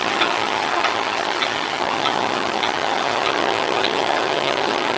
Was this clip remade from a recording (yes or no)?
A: yes